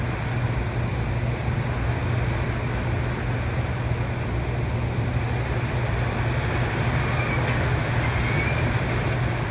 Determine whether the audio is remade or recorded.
recorded